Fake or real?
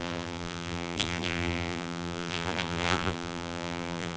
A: fake